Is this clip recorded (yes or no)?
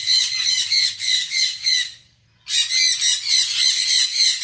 yes